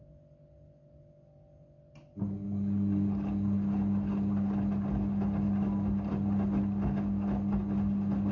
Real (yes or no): yes